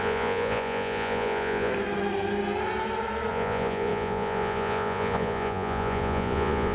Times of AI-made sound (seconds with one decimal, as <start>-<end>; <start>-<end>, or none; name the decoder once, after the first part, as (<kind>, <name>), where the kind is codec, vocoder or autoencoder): 0.0-1.7 (vocoder, Vocos); 3.3-6.7